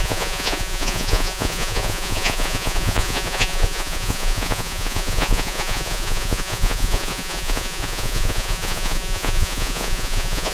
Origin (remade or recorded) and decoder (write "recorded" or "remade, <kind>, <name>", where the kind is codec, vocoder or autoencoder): remade, vocoder, Vocos